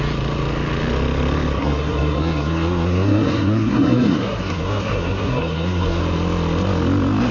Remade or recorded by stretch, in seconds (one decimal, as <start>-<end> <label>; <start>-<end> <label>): 0.0-1.6 recorded; 1.6-6.0 remade; 6.0-7.3 recorded